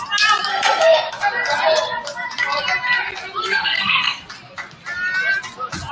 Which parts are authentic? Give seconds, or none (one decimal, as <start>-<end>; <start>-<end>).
0.0-0.5; 1.1-3.4; 4.2-5.9